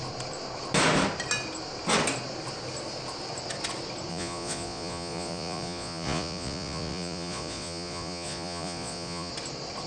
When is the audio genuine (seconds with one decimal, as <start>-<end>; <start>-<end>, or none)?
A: 0.0-4.1; 9.3-9.9